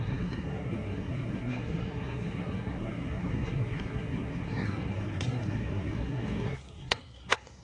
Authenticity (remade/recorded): remade